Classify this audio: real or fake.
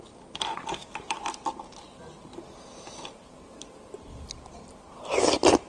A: real